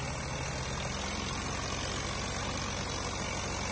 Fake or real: real